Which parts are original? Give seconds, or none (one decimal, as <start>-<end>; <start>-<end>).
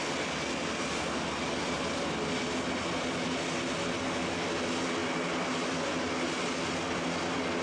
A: 0.0-7.6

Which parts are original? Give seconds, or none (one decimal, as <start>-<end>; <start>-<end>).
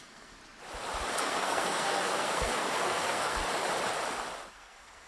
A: 0.4-1.2; 3.4-4.5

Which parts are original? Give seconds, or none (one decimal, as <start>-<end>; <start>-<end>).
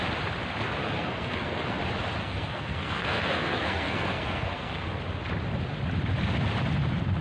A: 0.0-0.8; 1.8-2.2; 5.0-7.2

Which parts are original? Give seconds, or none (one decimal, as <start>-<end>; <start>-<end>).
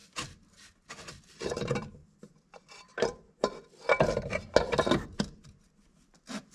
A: 0.0-6.5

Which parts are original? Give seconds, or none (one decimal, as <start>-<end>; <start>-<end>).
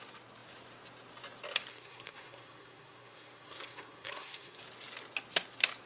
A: 0.0-1.7; 4.6-5.9